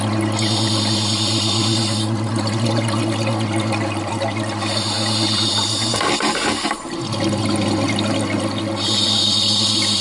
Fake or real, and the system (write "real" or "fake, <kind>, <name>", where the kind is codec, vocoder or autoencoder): real